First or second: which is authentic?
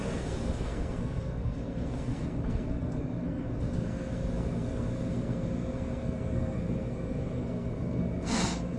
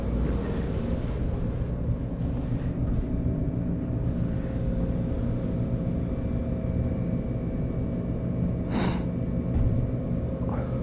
second